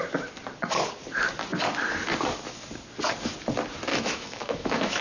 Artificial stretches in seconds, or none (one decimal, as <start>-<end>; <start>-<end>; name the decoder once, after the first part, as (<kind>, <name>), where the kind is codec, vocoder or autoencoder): 3.9-5.0 (autoencoder, DAC-VAE)